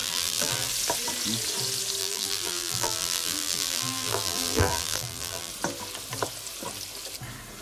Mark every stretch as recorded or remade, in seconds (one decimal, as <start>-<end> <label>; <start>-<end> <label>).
0.0-0.7 remade; 0.7-2.0 recorded; 2.0-5.5 remade; 5.5-7.6 recorded